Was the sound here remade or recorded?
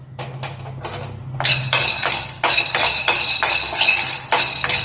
recorded